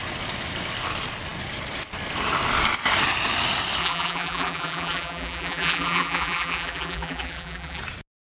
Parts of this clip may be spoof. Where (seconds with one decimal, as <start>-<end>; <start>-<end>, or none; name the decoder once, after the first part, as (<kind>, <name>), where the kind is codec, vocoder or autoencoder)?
3.8-7.8 (vocoder, BigVGAN v2)